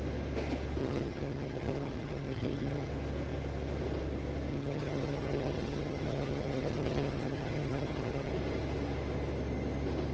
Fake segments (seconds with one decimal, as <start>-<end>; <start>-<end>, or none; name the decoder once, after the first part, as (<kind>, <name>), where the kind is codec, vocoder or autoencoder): 0.8-2.9 (vocoder, HiFi-GAN); 4.5-8.3